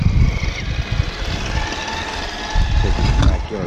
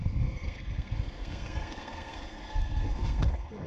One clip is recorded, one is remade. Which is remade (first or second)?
second